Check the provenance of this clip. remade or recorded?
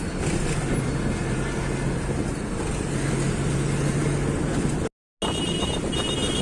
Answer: recorded